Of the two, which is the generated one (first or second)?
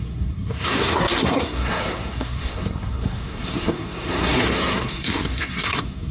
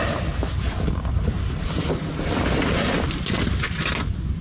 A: first